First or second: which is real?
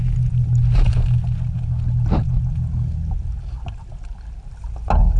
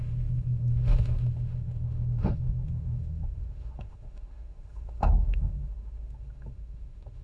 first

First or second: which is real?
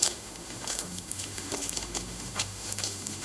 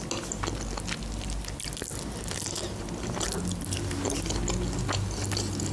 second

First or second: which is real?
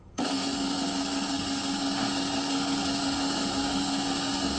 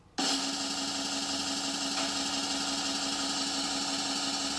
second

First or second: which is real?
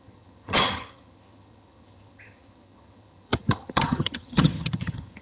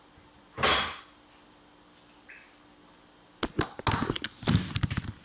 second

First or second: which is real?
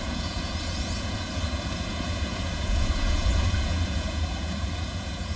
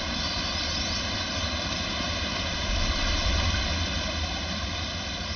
second